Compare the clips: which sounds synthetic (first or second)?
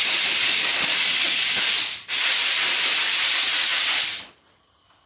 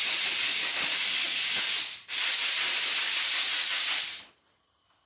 first